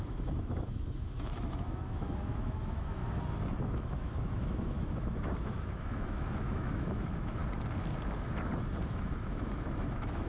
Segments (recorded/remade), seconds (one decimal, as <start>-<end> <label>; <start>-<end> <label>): 0.0-3.0 remade; 3.0-3.6 recorded; 3.6-7.4 remade; 7.4-8.9 recorded; 8.9-10.3 remade